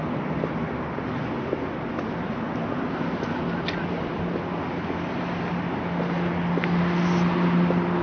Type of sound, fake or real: real